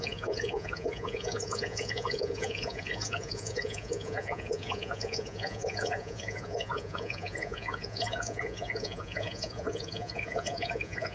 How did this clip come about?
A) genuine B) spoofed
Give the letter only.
B